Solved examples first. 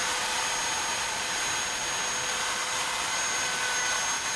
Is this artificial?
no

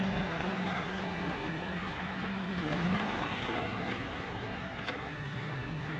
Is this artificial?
yes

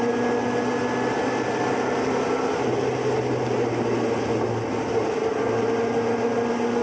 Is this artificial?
no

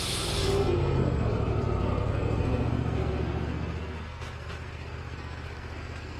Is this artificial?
yes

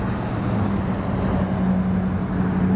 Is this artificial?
no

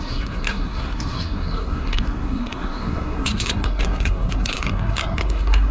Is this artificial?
yes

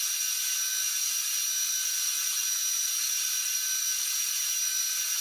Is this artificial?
no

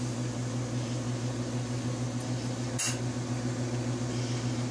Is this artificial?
no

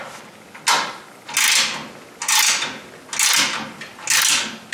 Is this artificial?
no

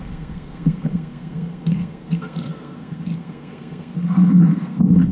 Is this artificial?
yes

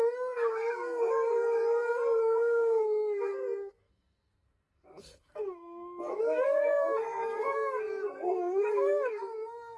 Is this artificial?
yes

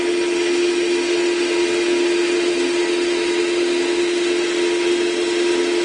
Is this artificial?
no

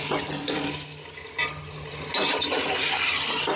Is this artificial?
no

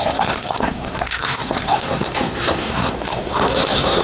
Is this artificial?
yes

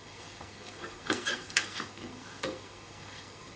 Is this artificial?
yes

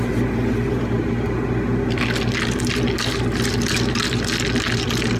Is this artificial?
no